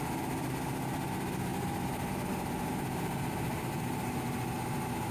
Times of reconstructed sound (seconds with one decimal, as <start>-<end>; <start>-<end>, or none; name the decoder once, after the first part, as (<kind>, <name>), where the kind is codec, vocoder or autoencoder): none